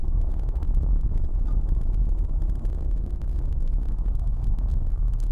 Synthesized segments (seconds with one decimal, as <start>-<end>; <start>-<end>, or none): 0.0-1.1; 2.7-5.3